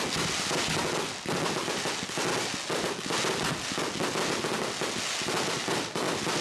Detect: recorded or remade recorded